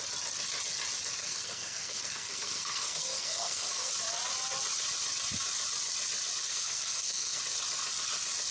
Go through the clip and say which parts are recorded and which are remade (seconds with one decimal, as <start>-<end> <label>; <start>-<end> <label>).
0.0-1.2 recorded; 1.2-3.9 remade; 3.9-6.4 recorded; 6.4-7.4 remade; 7.4-8.5 recorded